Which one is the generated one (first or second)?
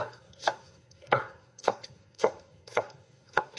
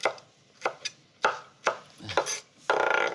first